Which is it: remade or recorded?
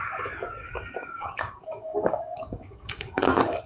remade